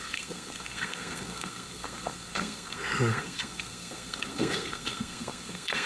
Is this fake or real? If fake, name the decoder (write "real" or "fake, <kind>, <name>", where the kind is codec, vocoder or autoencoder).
fake, codec, SNAC